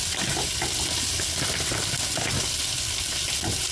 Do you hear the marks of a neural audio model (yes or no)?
no